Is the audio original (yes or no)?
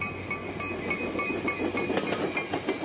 yes